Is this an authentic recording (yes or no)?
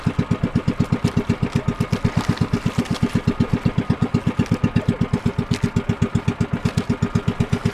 yes